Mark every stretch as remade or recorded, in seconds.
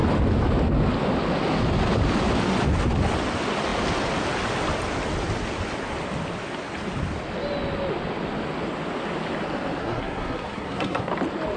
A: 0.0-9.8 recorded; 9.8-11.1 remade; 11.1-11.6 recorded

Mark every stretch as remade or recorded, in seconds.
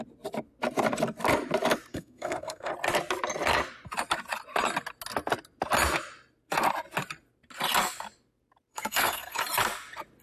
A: 0.0-1.9 recorded; 1.9-2.7 remade; 2.7-8.7 recorded; 8.7-9.4 remade; 9.4-10.2 recorded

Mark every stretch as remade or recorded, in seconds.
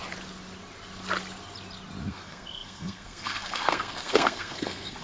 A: 0.0-2.1 recorded; 2.1-5.0 remade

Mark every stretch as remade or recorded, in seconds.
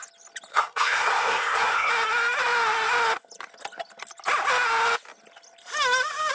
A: 0.0-0.5 recorded; 0.5-1.9 remade; 1.9-6.3 recorded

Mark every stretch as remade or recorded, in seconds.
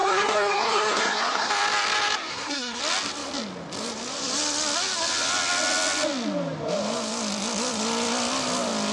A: 0.0-1.5 remade; 1.5-2.3 recorded; 2.3-2.8 remade; 2.8-8.9 recorded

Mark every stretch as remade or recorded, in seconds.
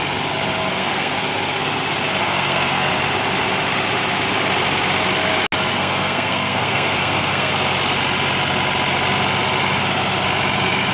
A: 0.0-0.7 recorded; 0.7-1.6 remade; 1.6-2.2 recorded; 2.2-2.9 remade; 2.9-5.7 recorded; 5.7-7.5 remade; 7.5-10.9 recorded